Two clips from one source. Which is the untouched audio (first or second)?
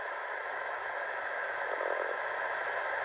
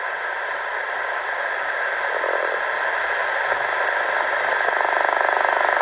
second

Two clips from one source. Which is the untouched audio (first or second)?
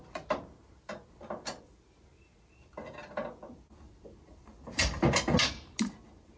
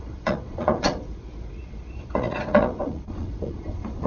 first